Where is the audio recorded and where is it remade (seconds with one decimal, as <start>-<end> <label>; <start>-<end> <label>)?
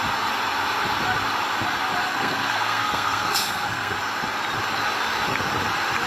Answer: 0.0-2.1 recorded; 2.1-4.0 remade; 4.0-6.1 recorded